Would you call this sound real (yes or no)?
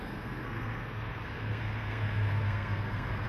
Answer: no